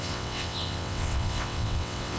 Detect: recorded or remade remade